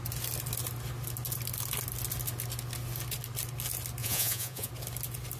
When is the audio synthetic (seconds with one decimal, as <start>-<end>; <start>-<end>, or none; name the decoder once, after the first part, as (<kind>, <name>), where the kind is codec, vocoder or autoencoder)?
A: 4.0-4.7 (vocoder, Vocos)